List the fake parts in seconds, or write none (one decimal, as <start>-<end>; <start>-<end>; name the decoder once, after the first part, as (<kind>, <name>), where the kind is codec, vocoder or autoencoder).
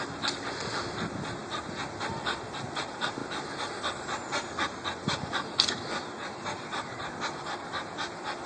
none